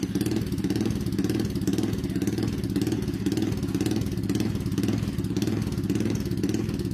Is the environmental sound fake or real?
real